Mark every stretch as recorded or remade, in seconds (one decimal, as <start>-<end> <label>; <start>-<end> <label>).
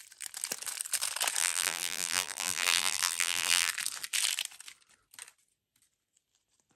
0.0-1.4 recorded; 1.4-3.7 remade; 3.7-6.8 recorded